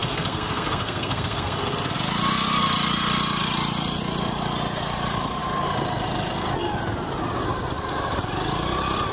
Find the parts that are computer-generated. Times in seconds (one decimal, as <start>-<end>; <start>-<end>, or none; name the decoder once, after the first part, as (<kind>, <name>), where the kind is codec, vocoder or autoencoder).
0.0-1.7 (codec, SNAC)